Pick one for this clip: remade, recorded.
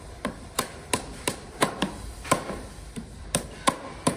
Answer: remade